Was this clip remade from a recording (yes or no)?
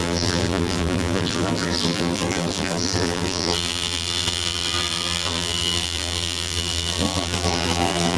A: yes